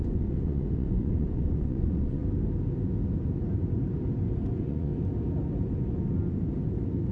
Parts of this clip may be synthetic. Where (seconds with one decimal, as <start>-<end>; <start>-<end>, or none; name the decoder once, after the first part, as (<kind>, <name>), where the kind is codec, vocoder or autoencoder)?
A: 0.0-2.2 (vocoder, Vocos); 4.5-4.9